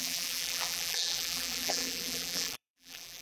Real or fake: fake